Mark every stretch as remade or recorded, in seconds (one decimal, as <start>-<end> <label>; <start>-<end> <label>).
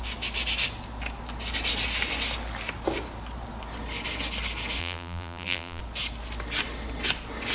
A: 0.0-4.8 recorded; 4.8-5.8 remade; 5.8-7.5 recorded